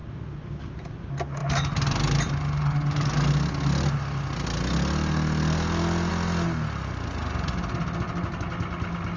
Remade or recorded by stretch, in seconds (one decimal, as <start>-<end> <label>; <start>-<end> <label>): 0.0-9.2 recorded